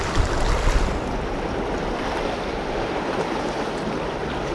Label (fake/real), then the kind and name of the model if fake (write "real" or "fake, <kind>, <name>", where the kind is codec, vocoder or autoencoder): real